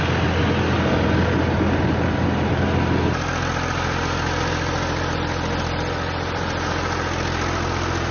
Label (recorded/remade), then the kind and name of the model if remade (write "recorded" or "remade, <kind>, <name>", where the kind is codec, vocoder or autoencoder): recorded